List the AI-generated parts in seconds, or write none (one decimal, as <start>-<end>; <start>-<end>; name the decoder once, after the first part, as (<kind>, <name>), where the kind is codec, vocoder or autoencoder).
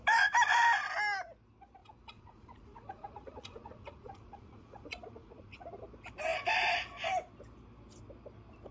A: 1.8-5.7 (vocoder, Vocos)